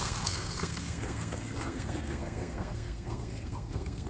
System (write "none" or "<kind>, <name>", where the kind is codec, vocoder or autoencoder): codec, SNAC